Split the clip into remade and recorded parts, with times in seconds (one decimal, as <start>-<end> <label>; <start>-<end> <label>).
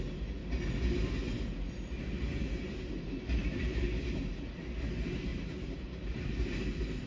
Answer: 0.0-3.4 recorded; 3.4-4.2 remade; 4.2-5.3 recorded; 5.3-6.6 remade; 6.6-7.1 recorded